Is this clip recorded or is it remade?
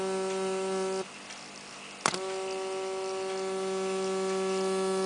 recorded